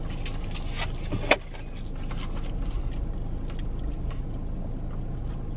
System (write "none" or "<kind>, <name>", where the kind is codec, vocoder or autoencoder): none